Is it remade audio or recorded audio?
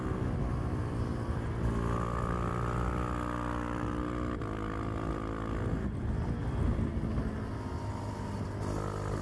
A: recorded